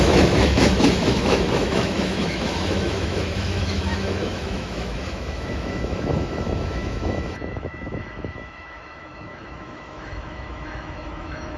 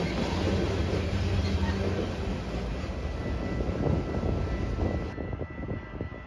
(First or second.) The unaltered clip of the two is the second